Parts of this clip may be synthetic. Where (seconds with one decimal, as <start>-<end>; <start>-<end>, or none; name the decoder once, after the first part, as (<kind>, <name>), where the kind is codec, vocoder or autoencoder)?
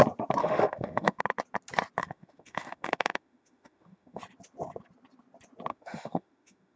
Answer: 0.4-1.2 (autoencoder, DAC-VAE); 2.0-4.2; 5.7-6.8